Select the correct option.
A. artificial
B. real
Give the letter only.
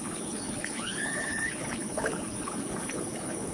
A